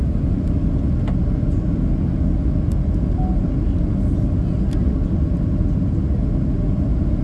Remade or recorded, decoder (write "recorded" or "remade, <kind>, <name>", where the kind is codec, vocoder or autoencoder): recorded